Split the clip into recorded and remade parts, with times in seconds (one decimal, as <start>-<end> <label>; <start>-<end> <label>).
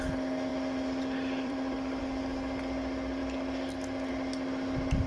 0.0-0.5 recorded; 0.5-2.0 remade; 2.0-5.1 recorded